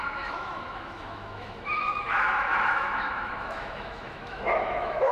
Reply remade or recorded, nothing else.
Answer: remade